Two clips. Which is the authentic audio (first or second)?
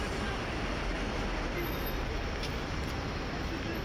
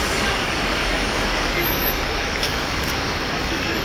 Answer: first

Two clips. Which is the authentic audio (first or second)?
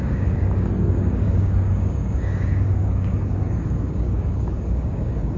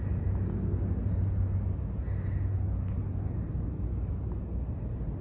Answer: second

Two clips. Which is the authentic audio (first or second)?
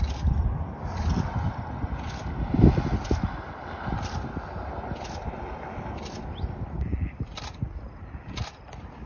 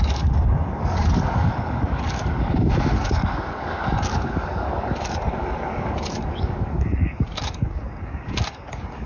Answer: first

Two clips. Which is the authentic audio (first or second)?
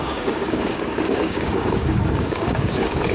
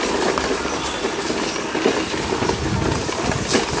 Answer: second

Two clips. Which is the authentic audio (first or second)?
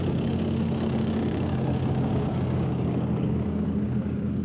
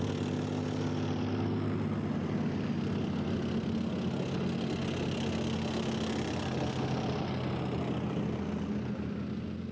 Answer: second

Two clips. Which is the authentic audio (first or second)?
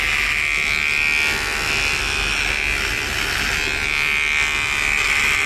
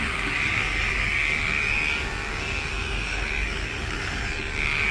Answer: first